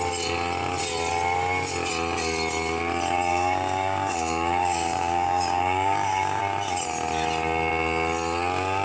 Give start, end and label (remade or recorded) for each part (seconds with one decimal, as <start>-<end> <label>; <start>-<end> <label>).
0.0-3.3 recorded; 3.3-6.4 remade; 6.4-8.8 recorded